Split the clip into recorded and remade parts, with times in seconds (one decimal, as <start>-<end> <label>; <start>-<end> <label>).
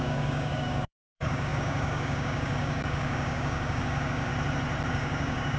0.0-4.3 remade; 4.3-4.9 recorded; 4.9-5.6 remade